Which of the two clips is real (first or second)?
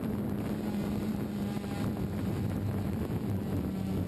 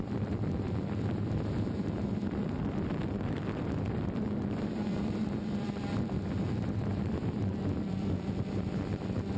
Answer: first